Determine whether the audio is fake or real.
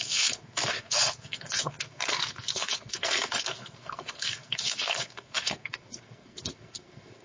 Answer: fake